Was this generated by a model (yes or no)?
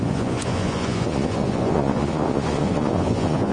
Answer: yes